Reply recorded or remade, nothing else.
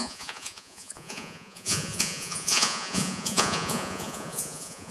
remade